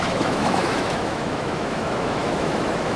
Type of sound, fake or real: fake